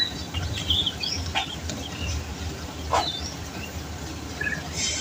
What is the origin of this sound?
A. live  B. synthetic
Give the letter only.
A